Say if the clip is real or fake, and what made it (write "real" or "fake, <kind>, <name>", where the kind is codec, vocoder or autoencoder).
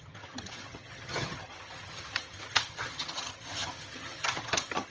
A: fake, vocoder, HiFi-GAN